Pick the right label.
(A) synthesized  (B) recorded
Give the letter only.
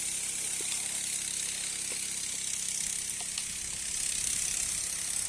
B